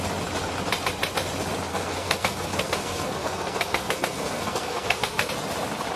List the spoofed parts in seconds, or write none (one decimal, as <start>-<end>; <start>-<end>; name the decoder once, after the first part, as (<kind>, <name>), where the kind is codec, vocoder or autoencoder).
1.7-5.3 (codec, SNAC)